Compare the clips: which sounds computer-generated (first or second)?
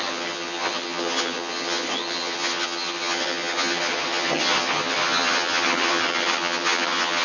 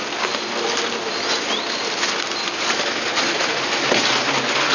first